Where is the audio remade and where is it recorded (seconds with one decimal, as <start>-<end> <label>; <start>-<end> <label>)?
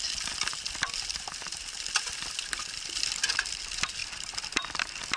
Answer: 0.0-5.2 recorded